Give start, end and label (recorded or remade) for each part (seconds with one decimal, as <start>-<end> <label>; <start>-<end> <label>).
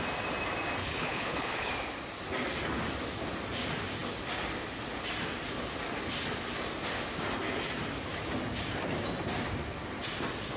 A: 0.0-0.8 recorded; 0.8-1.7 remade; 1.7-10.6 recorded